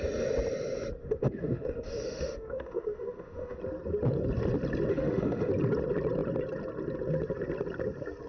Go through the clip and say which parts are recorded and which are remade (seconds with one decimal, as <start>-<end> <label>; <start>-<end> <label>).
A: 0.0-1.0 recorded; 1.0-3.6 remade; 3.6-4.9 recorded; 4.9-5.5 remade; 5.5-8.3 recorded